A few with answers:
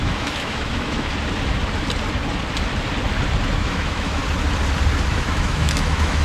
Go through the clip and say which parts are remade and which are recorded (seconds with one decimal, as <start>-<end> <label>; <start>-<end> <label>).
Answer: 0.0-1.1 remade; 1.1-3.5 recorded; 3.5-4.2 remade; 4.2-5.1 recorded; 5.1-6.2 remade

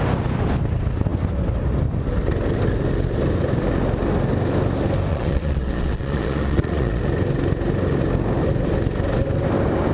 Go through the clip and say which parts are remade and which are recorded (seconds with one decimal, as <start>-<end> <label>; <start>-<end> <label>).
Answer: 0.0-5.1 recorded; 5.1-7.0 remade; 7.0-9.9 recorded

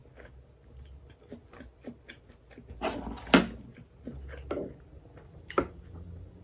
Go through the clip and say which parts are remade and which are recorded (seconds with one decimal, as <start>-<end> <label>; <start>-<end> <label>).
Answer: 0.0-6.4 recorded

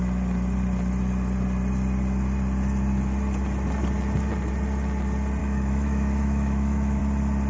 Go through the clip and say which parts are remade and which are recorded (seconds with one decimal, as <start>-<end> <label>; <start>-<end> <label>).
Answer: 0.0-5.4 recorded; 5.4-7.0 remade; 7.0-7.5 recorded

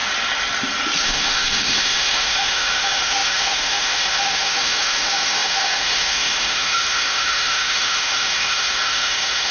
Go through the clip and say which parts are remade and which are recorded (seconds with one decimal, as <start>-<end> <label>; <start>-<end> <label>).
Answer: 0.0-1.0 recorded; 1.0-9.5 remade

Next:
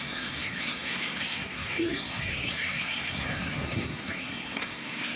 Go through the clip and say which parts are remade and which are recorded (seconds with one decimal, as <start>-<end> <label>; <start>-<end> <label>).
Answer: 0.0-5.2 remade

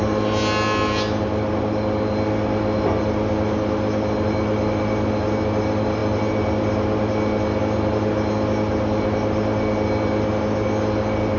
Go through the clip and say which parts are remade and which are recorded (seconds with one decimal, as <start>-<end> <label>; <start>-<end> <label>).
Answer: 0.0-11.4 recorded